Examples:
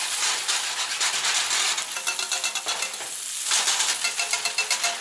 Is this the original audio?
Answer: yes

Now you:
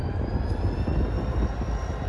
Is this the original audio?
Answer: yes